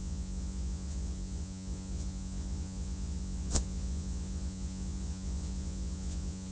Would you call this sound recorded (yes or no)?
no